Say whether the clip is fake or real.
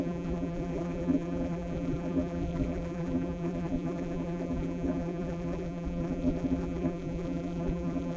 fake